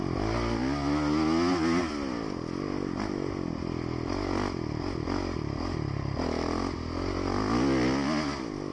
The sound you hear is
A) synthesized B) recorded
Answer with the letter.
B